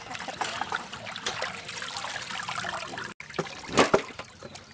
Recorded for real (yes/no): yes